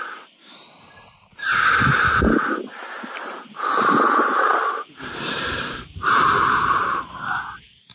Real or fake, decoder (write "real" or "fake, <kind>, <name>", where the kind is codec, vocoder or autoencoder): fake, vocoder, BigVGAN v2